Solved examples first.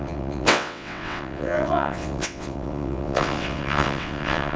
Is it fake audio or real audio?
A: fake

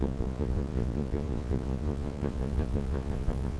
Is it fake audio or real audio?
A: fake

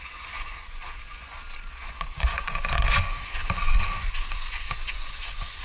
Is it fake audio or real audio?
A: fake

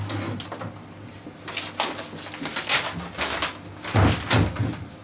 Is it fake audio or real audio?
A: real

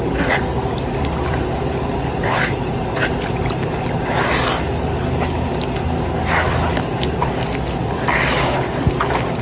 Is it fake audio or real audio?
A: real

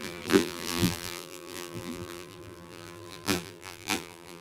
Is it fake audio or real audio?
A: fake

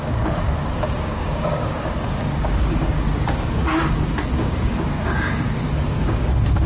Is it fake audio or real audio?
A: fake